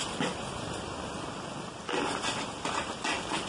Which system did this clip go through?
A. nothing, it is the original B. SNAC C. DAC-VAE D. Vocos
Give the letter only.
A